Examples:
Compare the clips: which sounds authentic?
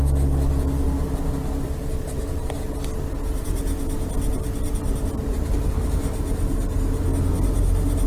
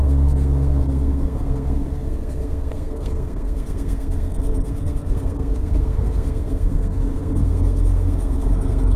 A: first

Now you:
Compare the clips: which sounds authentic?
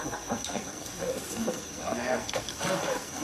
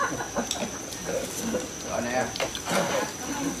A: second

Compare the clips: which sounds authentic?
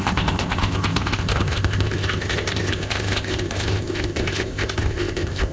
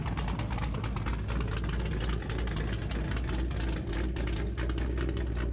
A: second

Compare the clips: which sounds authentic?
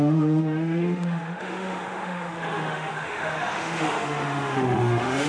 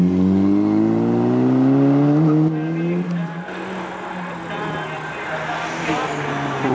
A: second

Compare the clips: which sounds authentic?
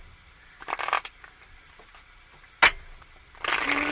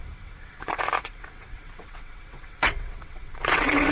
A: first